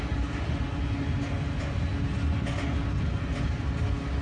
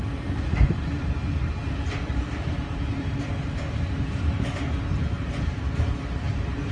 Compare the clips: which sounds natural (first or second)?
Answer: first